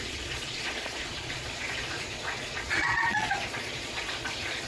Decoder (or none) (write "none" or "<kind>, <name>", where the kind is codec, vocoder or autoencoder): vocoder, Vocos